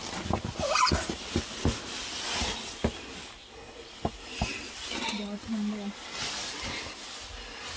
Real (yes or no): yes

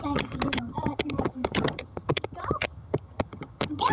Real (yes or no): no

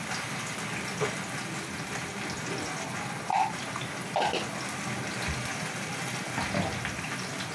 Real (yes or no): yes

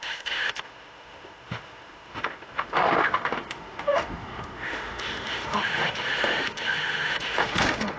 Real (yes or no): no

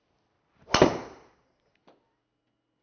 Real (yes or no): yes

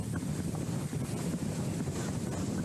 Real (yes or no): yes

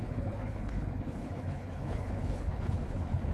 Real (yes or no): no